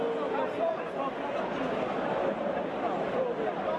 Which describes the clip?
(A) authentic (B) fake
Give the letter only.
A